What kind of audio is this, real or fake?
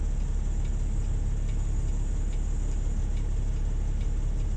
real